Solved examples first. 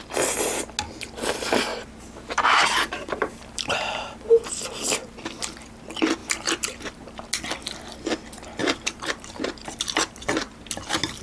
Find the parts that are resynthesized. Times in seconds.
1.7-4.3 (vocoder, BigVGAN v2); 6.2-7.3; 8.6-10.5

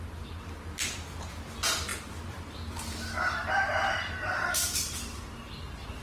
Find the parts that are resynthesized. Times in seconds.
1.9-5.4 (vocoder, BigVGAN v2)

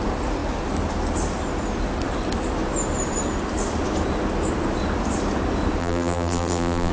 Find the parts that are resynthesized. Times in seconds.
5.8-6.9 (vocoder, BigVGAN v2)

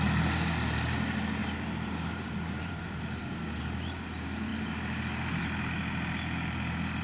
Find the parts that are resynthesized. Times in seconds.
1.4-3.2 (vocoder, BigVGAN v2)

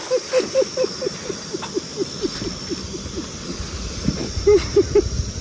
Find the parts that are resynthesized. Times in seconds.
4.2-5.0 (vocoder, BigVGAN v2)

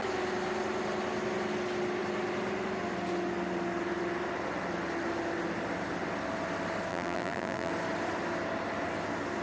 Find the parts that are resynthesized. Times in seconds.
6.9-7.7 (vocoder, BigVGAN v2)